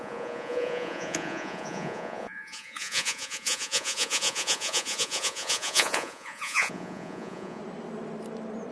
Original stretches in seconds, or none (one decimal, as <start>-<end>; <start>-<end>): 7.6-8.7